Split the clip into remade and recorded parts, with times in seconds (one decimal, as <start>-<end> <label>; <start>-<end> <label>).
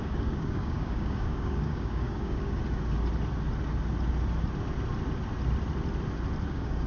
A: 0.0-2.6 remade; 2.6-6.5 recorded; 6.5-6.9 remade